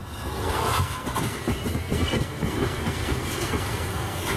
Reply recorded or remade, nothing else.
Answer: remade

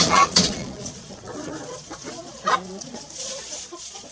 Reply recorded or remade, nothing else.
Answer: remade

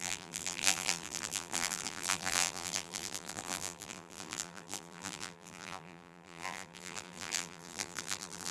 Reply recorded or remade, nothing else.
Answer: remade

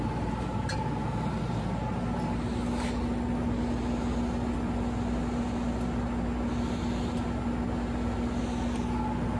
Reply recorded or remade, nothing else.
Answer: recorded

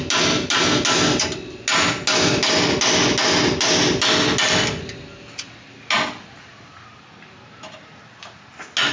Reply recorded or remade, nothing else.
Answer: recorded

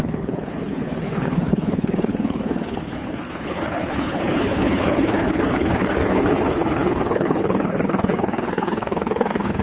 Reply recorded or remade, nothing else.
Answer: remade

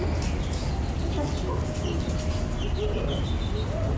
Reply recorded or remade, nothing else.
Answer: recorded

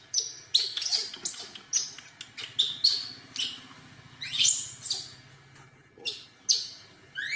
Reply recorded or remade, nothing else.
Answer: recorded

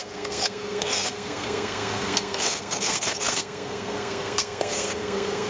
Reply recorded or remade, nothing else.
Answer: remade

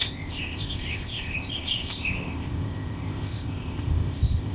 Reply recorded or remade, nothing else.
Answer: remade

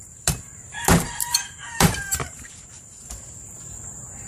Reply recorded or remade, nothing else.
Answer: remade